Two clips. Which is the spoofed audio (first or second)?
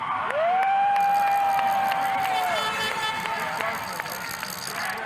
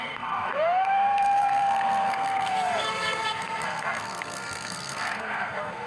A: second